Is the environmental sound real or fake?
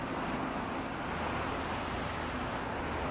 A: real